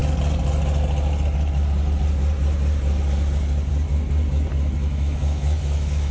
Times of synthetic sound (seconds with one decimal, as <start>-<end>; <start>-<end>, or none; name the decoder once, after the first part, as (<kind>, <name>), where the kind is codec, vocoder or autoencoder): 4.8-6.1 (autoencoder, DAC-VAE)